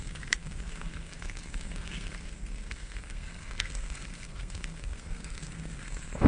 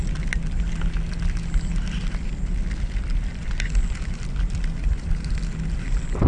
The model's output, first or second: first